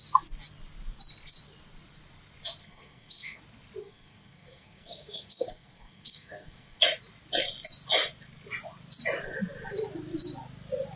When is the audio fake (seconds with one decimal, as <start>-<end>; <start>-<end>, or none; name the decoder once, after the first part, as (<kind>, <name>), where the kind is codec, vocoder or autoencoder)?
2.6-3.4 (codec, SNAC); 3.8-6.8